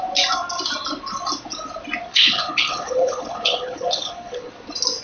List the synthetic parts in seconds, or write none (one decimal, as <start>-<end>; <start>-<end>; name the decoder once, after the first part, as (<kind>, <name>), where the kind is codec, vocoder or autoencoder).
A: 2.1-4.5 (codec, HILCodec)